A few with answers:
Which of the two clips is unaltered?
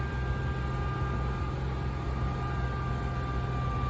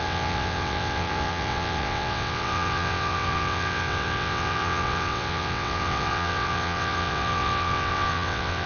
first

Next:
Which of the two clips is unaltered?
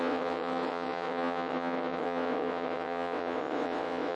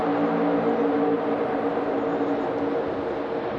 second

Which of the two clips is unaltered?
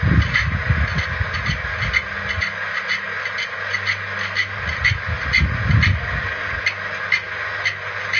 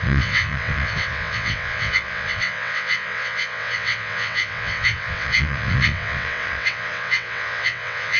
first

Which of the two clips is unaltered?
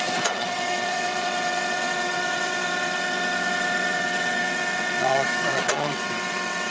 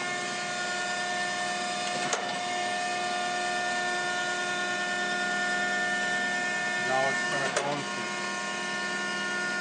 second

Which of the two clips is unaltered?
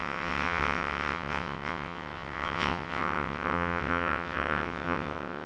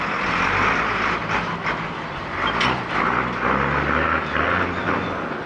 second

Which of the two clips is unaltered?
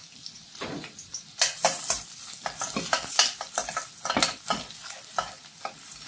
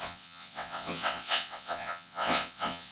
first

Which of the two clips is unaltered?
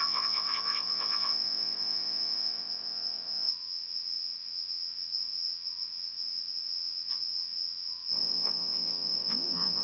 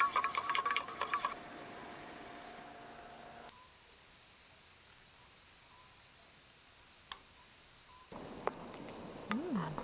second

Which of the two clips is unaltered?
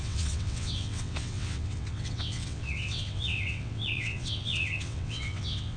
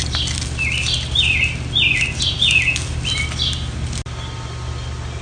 second